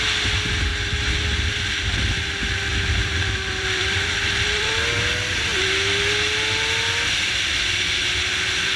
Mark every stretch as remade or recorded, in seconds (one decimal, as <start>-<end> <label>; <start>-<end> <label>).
0.0-0.7 recorded; 0.7-1.6 remade; 1.6-2.7 recorded; 2.7-4.8 remade; 4.8-8.8 recorded